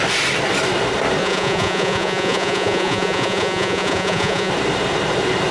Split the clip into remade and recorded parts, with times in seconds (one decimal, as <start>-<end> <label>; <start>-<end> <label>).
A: 0.0-1.2 recorded; 1.2-4.5 remade; 4.5-5.5 recorded